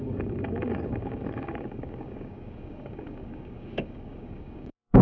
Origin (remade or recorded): remade